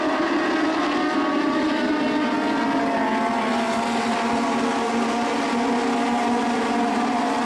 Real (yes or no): yes